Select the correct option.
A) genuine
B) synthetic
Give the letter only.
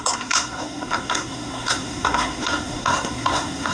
B